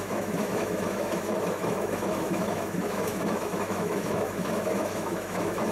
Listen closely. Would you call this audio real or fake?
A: fake